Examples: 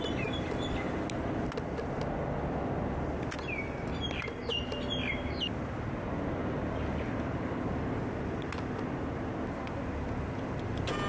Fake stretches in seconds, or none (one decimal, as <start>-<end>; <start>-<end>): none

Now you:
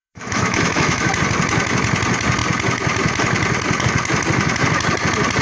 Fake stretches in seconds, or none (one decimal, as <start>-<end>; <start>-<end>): 0.0-1.1

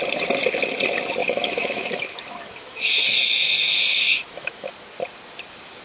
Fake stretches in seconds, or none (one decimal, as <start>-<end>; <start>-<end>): 1.2-4.7

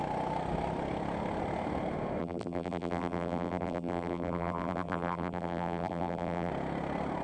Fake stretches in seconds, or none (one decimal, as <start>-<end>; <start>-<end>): 2.2-6.5

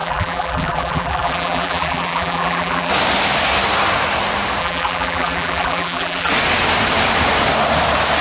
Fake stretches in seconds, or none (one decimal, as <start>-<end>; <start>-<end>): 0.0-2.9; 4.6-6.3

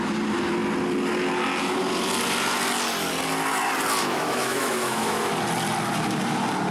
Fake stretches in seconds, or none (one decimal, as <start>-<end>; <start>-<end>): 4.0-5.3

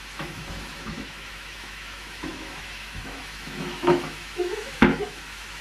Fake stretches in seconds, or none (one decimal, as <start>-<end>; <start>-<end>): 0.0-5.6

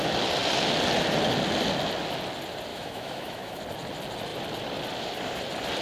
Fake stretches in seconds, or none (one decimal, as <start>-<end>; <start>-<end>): 2.7-3.6